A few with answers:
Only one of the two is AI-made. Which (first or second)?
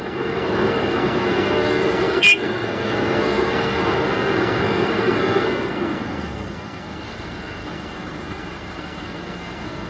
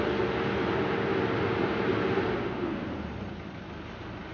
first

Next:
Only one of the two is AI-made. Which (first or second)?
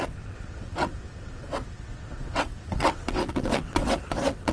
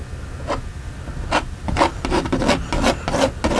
first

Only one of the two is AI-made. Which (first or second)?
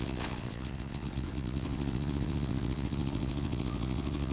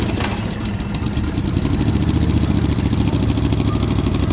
first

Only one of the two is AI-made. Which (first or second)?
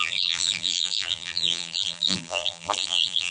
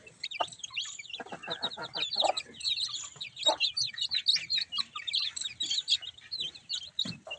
first